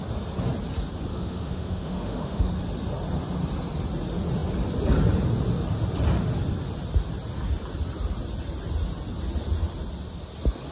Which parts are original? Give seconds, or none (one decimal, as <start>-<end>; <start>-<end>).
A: 0.0-1.1; 2.5-10.7